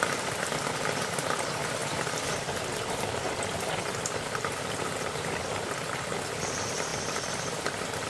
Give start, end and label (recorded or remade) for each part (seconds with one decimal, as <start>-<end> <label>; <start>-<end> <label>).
0.0-6.9 recorded; 6.9-7.6 remade; 7.6-8.1 recorded